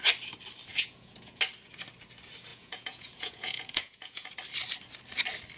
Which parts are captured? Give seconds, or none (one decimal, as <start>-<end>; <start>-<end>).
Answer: 0.0-0.7; 1.4-2.5; 4.3-5.6